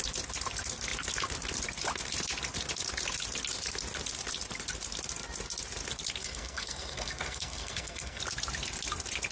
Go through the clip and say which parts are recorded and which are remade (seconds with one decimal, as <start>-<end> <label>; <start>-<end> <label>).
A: 0.0-6.2 recorded; 6.2-8.2 remade; 8.2-9.3 recorded

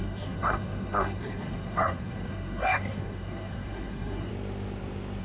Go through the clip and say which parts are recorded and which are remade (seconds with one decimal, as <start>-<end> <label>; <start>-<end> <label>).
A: 0.0-4.3 remade; 4.3-5.2 recorded

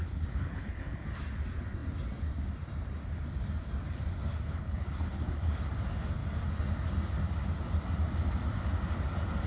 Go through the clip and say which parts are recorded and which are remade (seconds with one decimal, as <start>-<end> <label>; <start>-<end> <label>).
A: 0.0-1.2 remade; 1.2-4.3 recorded; 4.3-5.7 remade; 5.7-9.5 recorded

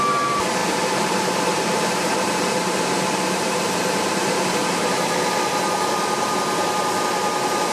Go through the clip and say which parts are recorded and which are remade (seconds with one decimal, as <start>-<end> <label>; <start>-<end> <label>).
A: 0.0-0.6 recorded; 0.6-5.2 remade; 5.2-7.7 recorded

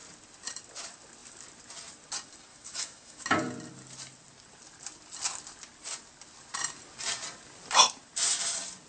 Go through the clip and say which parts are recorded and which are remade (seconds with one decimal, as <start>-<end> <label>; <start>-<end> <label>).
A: 0.0-2.5 recorded; 2.5-3.2 remade; 3.2-8.9 recorded

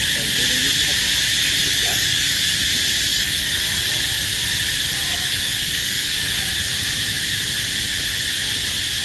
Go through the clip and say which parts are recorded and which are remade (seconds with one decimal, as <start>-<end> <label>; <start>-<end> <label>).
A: 0.0-1.6 recorded; 1.6-2.6 remade; 2.6-3.1 recorded; 3.1-4.0 remade; 4.0-5.1 recorded; 5.1-6.5 remade; 6.5-9.0 recorded

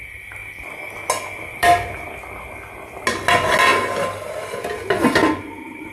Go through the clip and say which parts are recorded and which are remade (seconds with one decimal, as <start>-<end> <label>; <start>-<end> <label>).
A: 0.0-5.9 recorded